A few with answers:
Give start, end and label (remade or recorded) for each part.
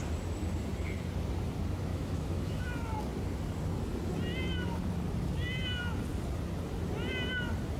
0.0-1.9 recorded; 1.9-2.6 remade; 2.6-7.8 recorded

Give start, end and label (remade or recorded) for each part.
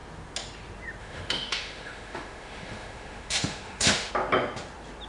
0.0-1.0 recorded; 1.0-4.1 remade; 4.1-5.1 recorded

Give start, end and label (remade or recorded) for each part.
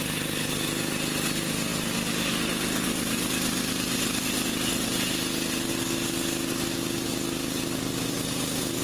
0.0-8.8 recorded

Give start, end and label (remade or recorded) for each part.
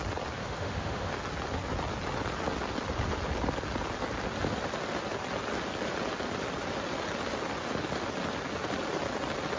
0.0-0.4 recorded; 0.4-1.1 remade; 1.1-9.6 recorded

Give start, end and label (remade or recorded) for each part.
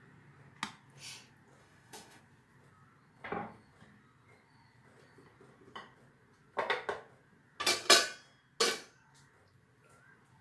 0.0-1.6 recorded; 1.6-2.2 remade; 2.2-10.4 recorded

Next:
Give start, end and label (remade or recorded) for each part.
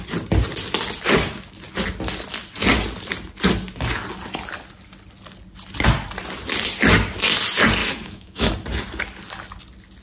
0.0-7.8 recorded; 7.8-8.5 remade; 8.5-10.0 recorded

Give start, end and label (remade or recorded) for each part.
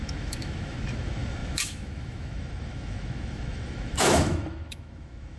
0.0-5.4 remade